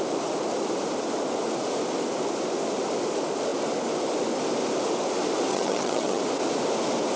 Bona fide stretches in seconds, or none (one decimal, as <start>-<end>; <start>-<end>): 0.0-5.5; 6.2-7.2